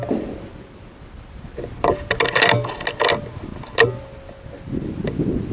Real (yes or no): yes